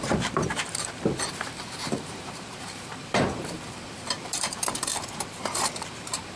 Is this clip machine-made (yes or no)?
yes